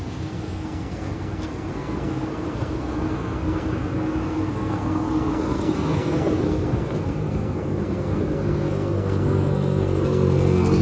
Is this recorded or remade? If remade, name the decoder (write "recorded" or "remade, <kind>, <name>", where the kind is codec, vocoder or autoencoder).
remade, codec, SNAC